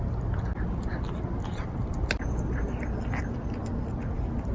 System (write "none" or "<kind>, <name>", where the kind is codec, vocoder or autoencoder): none